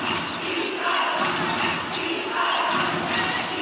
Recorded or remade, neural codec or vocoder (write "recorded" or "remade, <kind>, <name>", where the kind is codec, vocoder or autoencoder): recorded